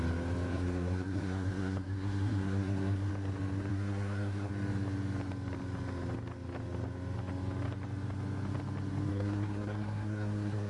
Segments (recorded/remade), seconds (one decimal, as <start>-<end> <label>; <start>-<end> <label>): 0.0-0.5 recorded; 0.5-3.1 remade; 3.1-3.7 recorded; 3.7-4.5 remade; 4.5-9.1 recorded; 9.1-10.7 remade